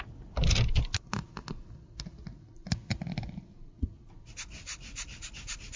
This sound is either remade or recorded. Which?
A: recorded